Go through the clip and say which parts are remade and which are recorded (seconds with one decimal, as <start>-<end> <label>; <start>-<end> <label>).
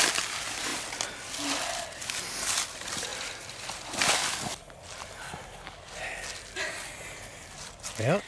0.0-8.3 recorded